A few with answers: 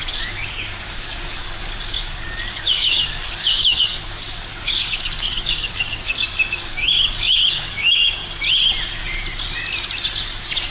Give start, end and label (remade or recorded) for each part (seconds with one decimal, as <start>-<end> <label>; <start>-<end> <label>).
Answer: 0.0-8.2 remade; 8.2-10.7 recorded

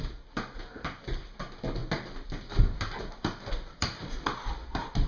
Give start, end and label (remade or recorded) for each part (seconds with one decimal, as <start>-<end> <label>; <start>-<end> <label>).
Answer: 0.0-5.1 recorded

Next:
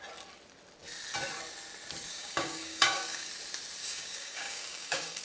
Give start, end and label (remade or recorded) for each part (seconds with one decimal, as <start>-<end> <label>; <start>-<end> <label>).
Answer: 0.0-2.1 recorded; 2.1-3.3 remade; 3.3-3.8 recorded; 3.8-5.2 remade

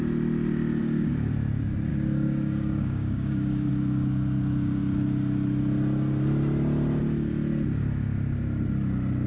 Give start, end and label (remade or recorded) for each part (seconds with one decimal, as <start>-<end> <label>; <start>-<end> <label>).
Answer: 0.0-0.8 recorded; 0.8-1.3 remade; 1.3-1.9 recorded; 1.9-3.7 remade; 3.7-9.3 recorded

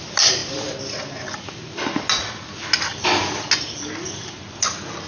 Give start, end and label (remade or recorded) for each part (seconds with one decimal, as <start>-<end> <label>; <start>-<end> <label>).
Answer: 0.0-5.1 recorded